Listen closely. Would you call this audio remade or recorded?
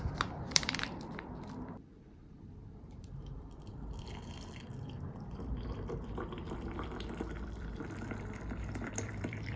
remade